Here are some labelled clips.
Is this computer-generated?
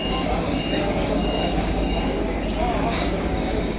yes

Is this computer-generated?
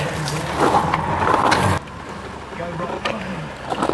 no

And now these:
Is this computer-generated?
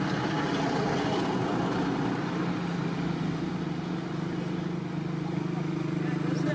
no